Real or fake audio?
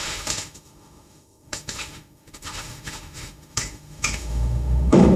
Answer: fake